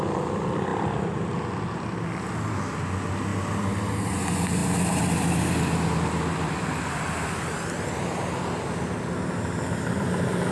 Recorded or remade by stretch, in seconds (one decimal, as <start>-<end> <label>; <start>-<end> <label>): 0.0-10.5 recorded